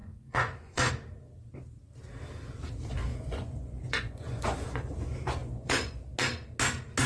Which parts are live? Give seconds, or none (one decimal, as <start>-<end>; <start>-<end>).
0.9-3.1; 4.9-5.4; 5.9-7.1

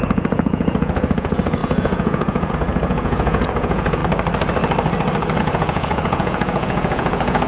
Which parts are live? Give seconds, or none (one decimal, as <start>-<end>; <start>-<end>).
4.0-5.4

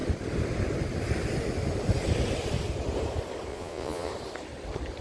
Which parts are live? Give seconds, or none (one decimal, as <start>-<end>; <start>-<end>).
0.0-3.5; 4.1-5.0

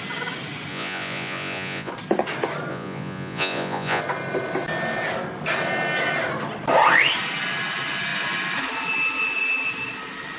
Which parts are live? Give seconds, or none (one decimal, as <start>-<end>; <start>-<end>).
0.0-0.7; 1.9-2.7; 4.0-10.4

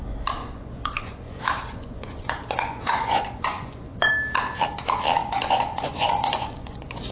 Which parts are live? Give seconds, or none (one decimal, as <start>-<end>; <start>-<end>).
0.0-0.4; 4.1-5.2

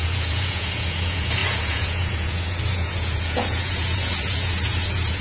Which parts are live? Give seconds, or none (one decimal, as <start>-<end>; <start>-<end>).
none

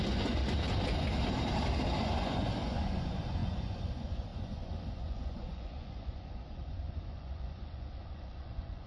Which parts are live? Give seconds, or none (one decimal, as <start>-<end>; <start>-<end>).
0.4-2.0